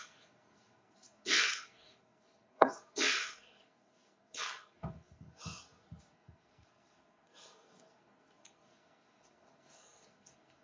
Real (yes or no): no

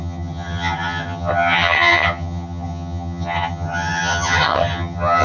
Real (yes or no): no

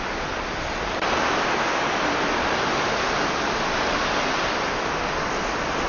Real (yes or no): yes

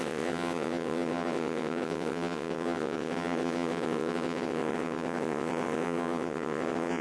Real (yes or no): no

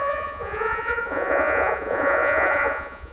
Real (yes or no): no